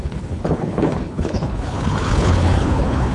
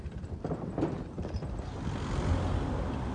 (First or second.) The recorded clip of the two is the second